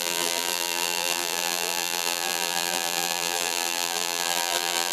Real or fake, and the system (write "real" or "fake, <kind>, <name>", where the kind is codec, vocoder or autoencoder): fake, vocoder, BigVGAN v2